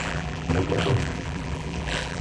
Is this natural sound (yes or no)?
no